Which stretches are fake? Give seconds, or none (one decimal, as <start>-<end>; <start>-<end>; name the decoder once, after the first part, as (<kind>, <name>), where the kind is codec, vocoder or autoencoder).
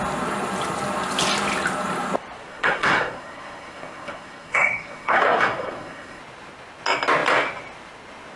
2.5-6.2 (codec, SNAC)